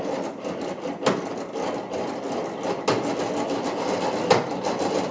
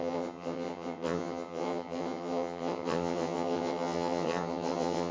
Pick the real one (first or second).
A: first